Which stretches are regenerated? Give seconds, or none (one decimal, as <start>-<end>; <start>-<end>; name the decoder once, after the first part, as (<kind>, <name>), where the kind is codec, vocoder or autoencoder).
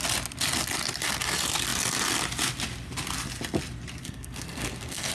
4.0-5.1 (codec, SNAC)